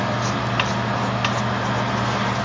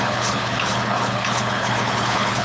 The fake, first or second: second